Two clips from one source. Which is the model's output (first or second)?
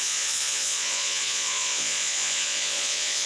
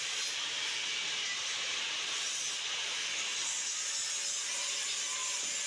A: first